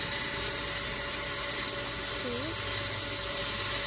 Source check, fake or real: real